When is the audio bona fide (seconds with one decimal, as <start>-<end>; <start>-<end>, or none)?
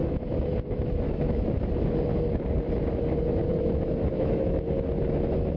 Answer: 1.4-3.4; 4.7-5.6